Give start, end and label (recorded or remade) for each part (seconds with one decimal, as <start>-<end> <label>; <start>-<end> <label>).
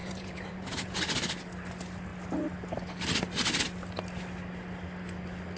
0.0-1.0 remade; 1.0-5.6 recorded